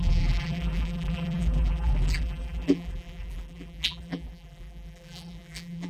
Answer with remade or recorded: remade